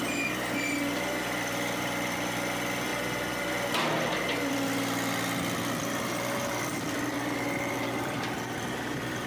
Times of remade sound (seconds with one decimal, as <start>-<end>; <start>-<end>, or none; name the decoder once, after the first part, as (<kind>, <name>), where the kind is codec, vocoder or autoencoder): 0.0-2.9 (vocoder, BigVGAN v2); 4.5-9.3